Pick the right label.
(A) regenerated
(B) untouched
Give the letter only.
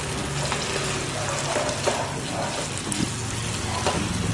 B